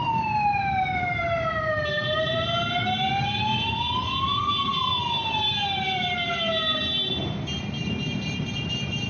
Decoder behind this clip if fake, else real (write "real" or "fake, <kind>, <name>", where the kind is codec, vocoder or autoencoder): fake, vocoder, BigVGAN v2